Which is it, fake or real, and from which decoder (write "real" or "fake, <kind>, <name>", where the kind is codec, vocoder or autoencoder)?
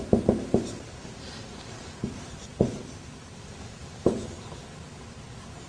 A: real